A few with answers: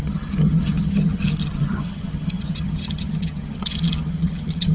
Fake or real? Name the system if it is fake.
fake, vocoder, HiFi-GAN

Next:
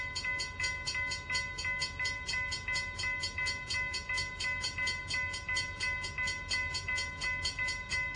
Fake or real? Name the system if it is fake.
real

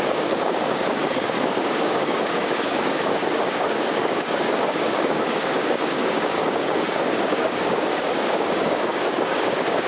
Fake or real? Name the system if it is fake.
fake, codec, DAC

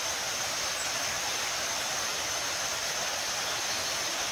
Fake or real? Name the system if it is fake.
real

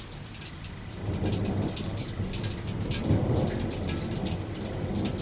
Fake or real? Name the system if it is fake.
real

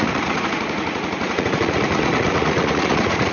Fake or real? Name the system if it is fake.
fake, vocoder, Vocos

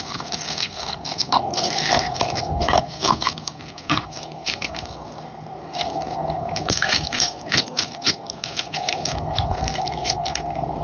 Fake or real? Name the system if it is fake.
fake, codec, SNAC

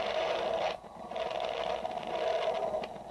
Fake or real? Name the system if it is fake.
real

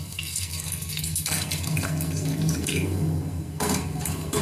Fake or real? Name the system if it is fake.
fake, codec, SNAC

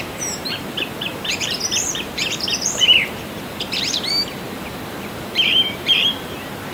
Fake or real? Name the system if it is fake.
fake, vocoder, BigVGAN v2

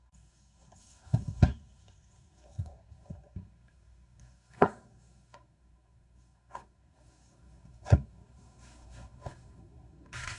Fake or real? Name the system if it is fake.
fake, codec, SNAC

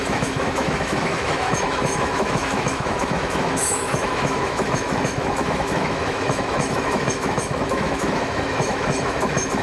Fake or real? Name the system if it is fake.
fake, autoencoder, DAC-VAE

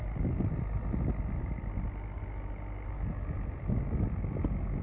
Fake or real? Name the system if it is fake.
real